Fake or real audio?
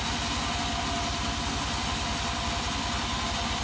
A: real